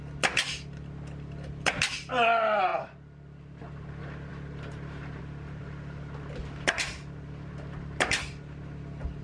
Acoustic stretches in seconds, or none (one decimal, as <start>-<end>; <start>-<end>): 0.0-9.2